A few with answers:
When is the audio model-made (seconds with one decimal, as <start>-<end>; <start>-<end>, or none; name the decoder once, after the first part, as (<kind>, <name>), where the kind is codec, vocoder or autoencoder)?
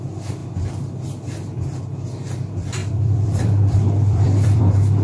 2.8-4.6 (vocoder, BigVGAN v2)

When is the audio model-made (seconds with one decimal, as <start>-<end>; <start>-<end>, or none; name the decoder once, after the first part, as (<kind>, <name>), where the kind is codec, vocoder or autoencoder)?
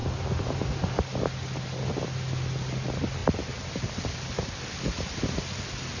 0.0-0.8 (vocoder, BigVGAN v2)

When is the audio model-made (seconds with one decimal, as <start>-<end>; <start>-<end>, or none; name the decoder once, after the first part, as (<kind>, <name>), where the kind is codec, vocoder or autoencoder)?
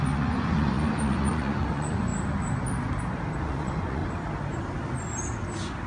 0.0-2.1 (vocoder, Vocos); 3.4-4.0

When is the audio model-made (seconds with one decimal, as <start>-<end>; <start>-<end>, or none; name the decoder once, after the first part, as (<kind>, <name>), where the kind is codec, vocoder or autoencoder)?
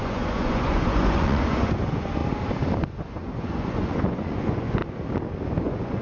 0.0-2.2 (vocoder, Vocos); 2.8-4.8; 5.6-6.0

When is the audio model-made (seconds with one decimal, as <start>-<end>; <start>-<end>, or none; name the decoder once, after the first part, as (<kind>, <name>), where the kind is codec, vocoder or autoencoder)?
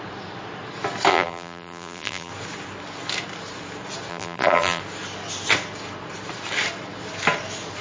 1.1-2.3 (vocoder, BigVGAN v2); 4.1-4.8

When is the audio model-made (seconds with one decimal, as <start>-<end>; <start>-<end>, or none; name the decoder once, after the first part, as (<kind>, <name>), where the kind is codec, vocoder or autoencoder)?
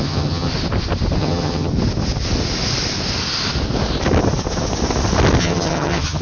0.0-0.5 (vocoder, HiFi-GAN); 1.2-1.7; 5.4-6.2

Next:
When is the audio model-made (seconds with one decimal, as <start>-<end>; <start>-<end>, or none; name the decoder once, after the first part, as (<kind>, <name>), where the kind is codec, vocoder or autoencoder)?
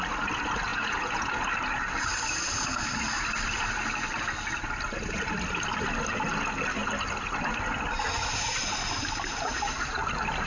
0.7-1.3 (vocoder, Vocos)